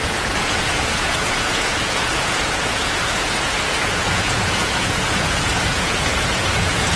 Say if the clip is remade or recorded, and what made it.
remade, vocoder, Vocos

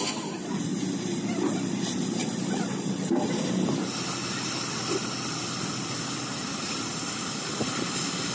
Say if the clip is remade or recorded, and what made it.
recorded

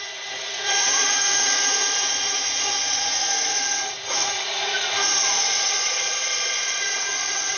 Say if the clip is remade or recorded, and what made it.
remade, vocoder, Vocos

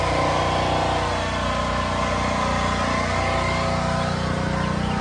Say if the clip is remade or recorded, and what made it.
recorded